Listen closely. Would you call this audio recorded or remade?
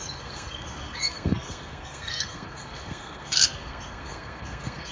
remade